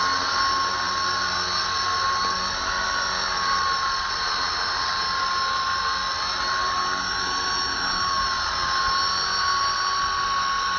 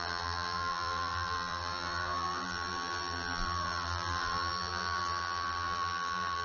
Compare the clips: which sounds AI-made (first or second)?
second